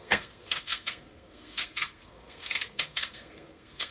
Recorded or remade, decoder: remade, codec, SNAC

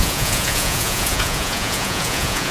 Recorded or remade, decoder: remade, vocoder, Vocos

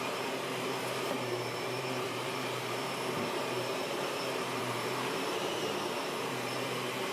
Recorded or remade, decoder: remade, vocoder, BigVGAN v2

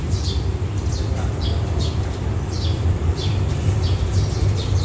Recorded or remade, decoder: remade, vocoder, BigVGAN v2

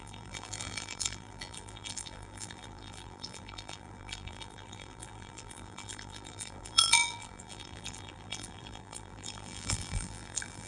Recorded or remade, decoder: remade, vocoder, BigVGAN v2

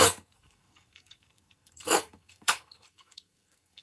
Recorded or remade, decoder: remade, codec, SNAC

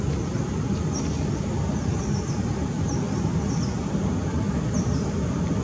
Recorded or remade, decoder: recorded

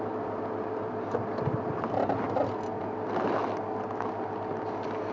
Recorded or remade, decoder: recorded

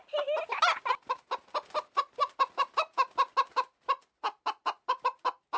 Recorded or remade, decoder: recorded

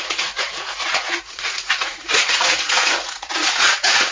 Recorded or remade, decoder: remade, vocoder, Vocos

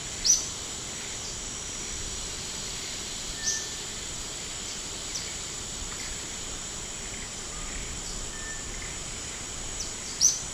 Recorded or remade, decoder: remade, vocoder, BigVGAN v2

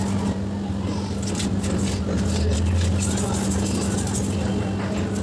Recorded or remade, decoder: recorded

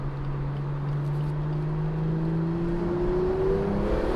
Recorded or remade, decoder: recorded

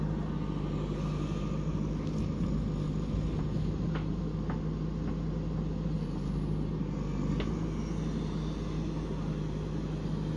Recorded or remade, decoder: recorded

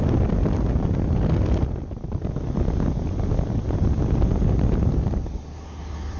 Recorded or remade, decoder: recorded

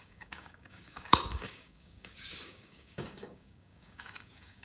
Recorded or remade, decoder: remade, codec, DAC